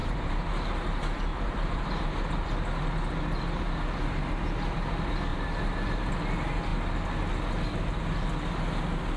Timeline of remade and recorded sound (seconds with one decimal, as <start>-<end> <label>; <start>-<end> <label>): 0.0-0.5 remade; 0.5-1.3 recorded; 1.3-1.9 remade; 1.9-5.3 recorded; 5.3-6.1 remade; 6.1-9.2 recorded